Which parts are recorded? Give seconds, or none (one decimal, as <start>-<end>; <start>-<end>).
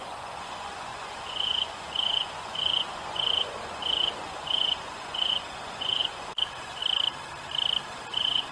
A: 6.8-7.9